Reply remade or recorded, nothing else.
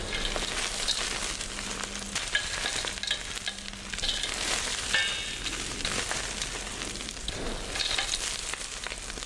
recorded